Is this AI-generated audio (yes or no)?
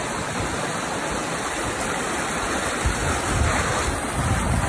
no